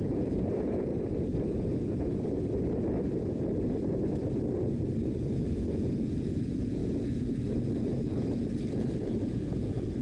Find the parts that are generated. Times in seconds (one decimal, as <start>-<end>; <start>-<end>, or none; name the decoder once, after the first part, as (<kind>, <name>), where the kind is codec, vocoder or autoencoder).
0.0-0.9 (vocoder, Vocos); 5.3-10.0